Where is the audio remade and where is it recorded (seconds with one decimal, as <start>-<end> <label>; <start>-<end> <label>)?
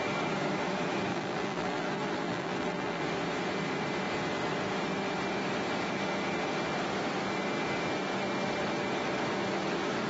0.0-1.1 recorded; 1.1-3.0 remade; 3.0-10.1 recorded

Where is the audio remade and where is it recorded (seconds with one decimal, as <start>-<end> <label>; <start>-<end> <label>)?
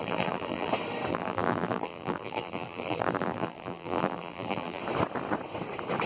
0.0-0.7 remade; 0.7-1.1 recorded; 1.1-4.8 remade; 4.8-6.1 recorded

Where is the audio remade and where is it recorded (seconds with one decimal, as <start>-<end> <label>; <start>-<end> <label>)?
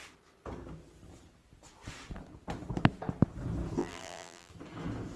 0.0-3.8 recorded; 3.8-4.5 remade; 4.5-5.2 recorded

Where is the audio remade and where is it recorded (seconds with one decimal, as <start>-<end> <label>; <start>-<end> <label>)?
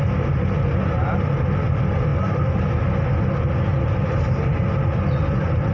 0.0-2.1 recorded; 2.1-2.7 remade; 2.7-3.7 recorded; 3.7-4.5 remade; 4.5-5.7 recorded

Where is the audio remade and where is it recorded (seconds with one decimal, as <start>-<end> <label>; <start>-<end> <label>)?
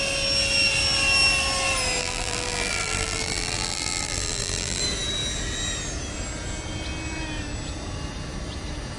0.0-2.0 recorded; 2.0-4.8 remade; 4.8-9.0 recorded